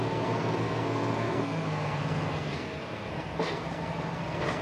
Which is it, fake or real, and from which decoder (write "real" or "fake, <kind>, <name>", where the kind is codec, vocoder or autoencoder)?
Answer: fake, codec, SNAC